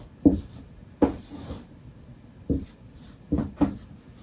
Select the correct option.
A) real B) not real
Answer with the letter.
A